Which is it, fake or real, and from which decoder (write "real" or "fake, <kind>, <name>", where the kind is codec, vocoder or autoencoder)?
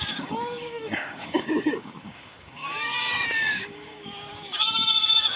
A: fake, codec, DAC